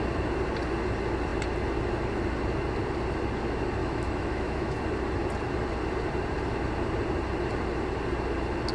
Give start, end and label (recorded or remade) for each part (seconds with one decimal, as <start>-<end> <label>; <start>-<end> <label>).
0.0-3.8 recorded; 3.8-4.8 remade; 4.8-8.7 recorded